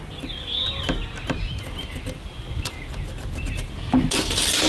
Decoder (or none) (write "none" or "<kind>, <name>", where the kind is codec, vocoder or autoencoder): none